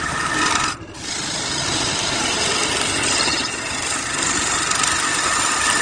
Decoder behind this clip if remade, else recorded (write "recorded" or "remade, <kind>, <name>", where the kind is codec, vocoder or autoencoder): recorded